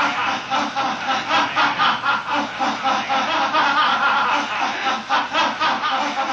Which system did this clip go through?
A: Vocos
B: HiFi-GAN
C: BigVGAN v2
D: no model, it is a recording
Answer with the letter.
D